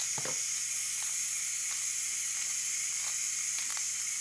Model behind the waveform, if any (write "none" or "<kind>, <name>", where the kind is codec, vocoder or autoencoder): none